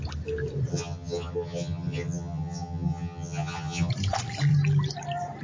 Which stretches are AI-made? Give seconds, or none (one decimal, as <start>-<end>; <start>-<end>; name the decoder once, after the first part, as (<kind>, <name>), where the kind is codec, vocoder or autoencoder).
0.7-3.9 (vocoder, HiFi-GAN)